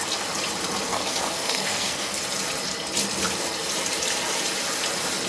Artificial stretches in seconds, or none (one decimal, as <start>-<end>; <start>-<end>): 0.9-2.2